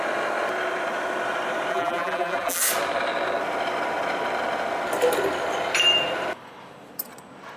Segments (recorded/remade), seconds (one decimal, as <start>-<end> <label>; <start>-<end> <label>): 0.0-1.7 recorded; 1.7-2.6 remade; 2.6-7.6 recorded